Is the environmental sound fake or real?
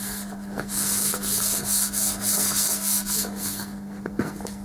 fake